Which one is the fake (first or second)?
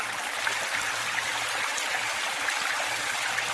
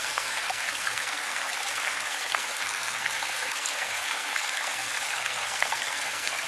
second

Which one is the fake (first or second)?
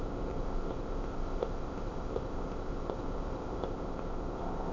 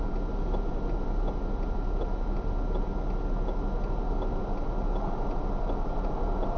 first